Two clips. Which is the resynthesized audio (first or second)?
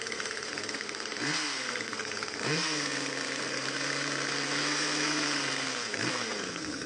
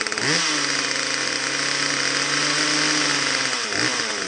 first